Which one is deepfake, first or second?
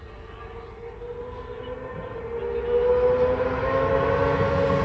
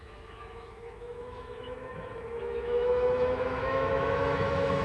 second